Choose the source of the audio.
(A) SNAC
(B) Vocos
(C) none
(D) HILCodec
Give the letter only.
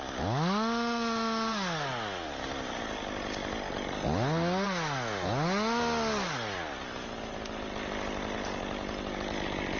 C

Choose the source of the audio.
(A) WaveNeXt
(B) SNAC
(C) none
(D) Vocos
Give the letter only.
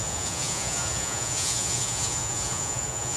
D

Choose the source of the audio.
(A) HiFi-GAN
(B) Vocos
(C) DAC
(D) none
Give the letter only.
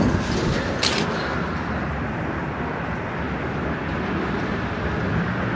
D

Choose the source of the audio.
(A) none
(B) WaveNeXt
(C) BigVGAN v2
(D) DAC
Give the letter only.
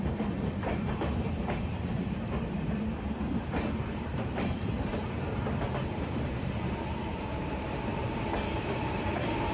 C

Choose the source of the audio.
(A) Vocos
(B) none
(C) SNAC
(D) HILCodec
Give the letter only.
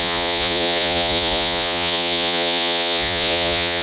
A